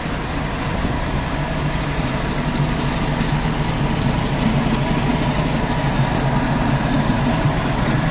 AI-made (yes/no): no